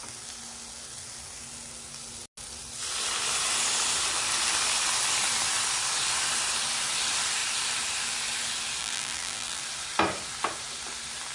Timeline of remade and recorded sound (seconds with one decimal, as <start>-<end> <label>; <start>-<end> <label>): 0.0-8.8 recorded; 8.8-9.6 remade; 9.6-11.3 recorded